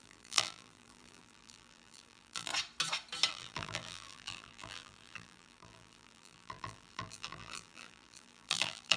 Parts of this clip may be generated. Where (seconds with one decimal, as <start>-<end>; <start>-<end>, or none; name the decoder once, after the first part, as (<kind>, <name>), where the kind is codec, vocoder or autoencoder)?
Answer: 0.0-2.5 (vocoder, BigVGAN v2); 3.3-9.0